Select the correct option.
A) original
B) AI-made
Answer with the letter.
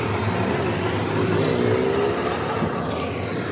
A